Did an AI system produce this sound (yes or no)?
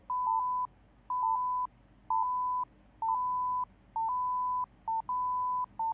no